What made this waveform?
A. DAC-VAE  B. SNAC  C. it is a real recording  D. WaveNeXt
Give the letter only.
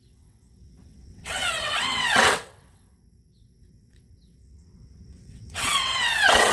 D